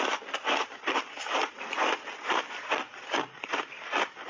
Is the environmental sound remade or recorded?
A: recorded